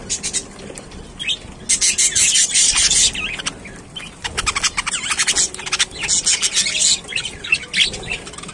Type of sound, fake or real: real